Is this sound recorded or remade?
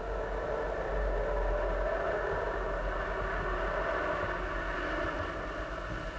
recorded